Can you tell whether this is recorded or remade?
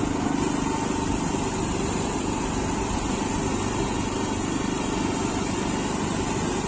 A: recorded